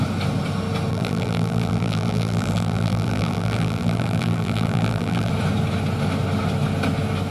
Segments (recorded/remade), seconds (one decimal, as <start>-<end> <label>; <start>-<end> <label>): 0.0-0.9 recorded; 0.9-5.3 remade; 5.3-7.3 recorded